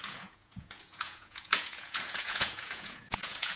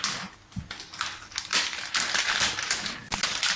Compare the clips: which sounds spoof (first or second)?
first